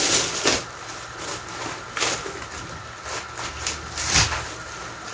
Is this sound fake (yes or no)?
no